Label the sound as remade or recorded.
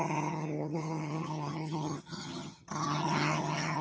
remade